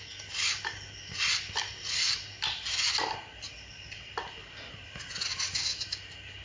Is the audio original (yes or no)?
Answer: yes